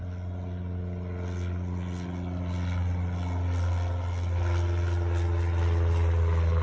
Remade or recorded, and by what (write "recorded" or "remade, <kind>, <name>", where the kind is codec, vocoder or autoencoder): recorded